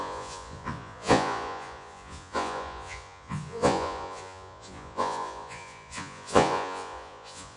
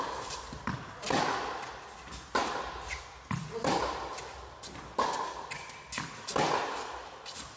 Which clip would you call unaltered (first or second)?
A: second